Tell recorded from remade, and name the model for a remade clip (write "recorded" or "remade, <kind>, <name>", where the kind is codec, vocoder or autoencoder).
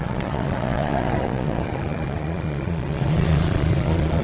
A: remade, vocoder, Vocos